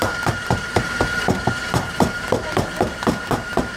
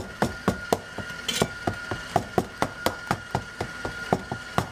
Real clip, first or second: second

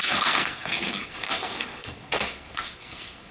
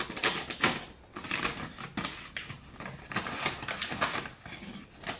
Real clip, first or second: second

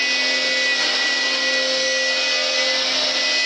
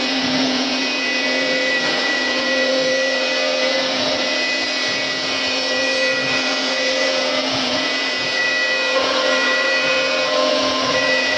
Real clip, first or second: first